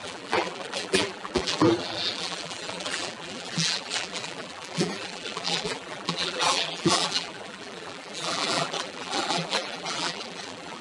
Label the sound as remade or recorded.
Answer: remade